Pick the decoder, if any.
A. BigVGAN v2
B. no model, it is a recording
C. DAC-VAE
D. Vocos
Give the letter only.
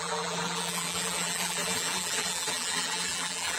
A